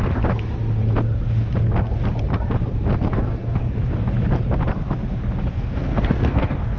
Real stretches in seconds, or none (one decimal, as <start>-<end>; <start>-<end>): 0.0-3.3; 3.8-5.5